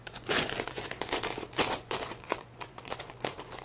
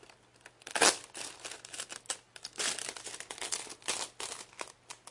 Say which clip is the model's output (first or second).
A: first